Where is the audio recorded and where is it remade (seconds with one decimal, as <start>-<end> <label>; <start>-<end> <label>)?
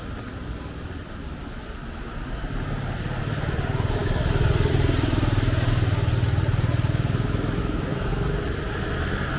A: 0.0-7.6 recorded; 7.6-8.1 remade; 8.1-9.4 recorded